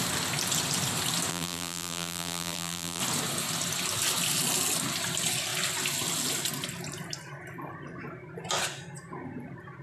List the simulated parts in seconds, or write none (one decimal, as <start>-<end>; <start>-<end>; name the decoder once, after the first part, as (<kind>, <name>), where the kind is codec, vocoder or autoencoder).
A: 1.3-3.0 (vocoder, BigVGAN v2)